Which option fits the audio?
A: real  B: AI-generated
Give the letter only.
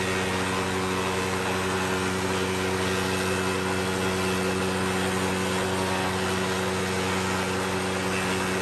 A